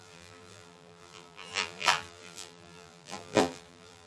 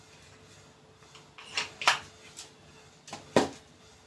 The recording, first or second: second